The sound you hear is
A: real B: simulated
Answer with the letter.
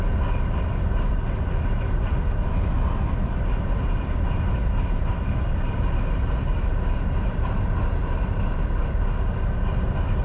A